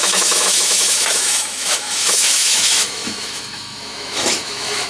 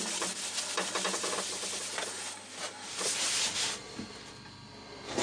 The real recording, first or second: second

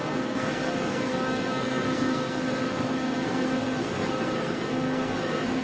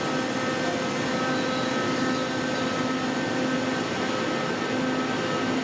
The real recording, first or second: second